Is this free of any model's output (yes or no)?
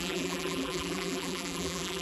no